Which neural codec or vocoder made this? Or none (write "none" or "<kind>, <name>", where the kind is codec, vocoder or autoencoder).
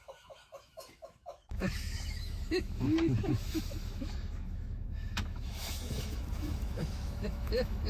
autoencoder, DAC-VAE